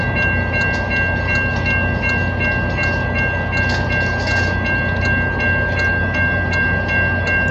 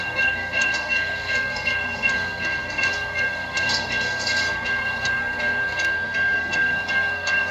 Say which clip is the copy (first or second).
second